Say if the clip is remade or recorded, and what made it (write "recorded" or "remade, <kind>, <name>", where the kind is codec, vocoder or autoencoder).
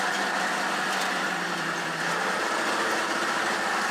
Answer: remade, vocoder, BigVGAN v2